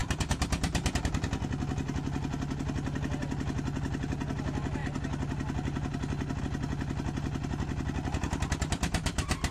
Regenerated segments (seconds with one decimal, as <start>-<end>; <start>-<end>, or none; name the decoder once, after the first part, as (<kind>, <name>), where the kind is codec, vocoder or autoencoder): none